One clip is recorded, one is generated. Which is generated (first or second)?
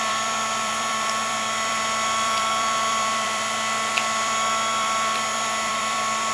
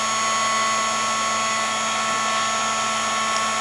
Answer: first